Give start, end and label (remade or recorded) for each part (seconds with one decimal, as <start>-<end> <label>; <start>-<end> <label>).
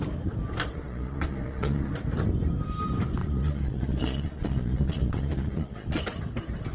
0.0-0.7 recorded; 0.7-1.9 remade; 1.9-3.2 recorded; 3.2-6.0 remade; 6.0-6.7 recorded